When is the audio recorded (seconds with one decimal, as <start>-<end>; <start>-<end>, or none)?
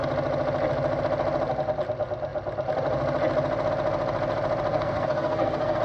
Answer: 0.0-4.7